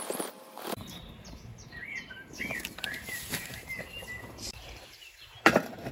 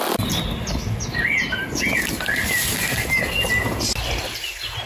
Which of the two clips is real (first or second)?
second